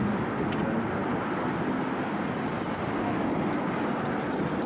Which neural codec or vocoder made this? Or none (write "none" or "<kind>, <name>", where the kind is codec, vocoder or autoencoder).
none